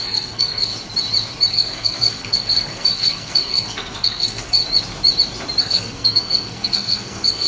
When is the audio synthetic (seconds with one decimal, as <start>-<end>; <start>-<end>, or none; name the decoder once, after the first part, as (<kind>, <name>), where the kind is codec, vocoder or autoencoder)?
0.0-0.7 (codec, SNAC); 1.5-4.6; 5.6-7.5